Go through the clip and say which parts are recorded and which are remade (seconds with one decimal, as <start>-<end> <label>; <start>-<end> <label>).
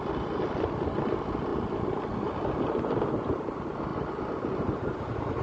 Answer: 0.0-5.4 recorded